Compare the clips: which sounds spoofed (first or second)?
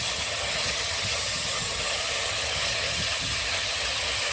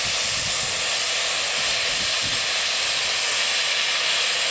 first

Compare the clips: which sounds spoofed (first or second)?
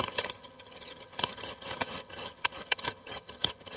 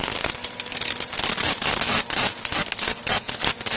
first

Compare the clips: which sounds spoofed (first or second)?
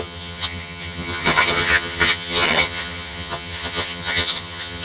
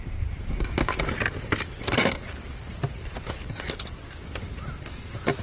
first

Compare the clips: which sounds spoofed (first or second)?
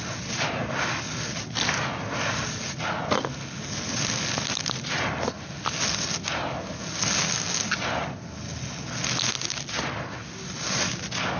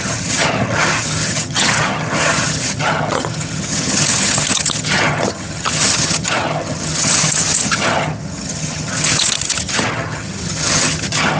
second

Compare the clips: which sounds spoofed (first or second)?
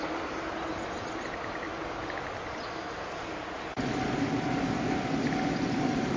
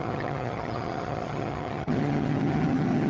second